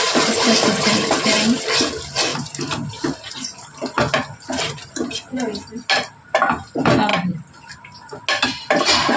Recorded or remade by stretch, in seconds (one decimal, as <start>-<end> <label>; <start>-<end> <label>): 0.0-9.2 recorded